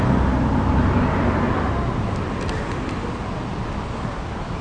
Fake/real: real